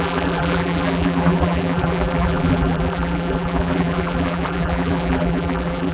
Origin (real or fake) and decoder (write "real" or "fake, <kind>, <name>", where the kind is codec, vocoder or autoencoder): fake, vocoder, BigVGAN v2